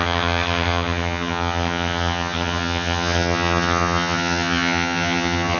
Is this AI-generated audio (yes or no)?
yes